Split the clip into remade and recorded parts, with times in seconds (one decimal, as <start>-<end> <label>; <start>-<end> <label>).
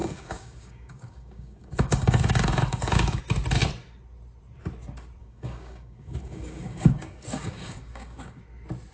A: 0.0-3.2 remade; 3.2-5.2 recorded; 5.2-8.4 remade; 8.4-8.9 recorded